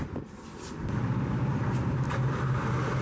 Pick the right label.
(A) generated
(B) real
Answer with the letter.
A